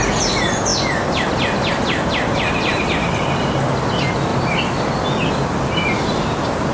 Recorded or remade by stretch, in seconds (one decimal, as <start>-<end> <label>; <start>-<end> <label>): 0.0-6.7 recorded